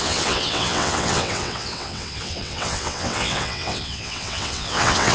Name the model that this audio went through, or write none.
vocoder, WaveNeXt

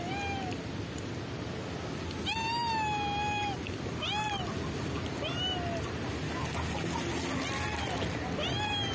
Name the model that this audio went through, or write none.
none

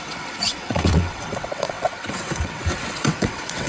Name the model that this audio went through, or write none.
vocoder, WaveNeXt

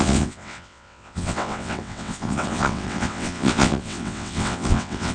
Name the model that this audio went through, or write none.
vocoder, WaveNeXt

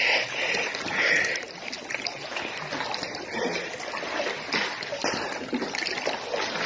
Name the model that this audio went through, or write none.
none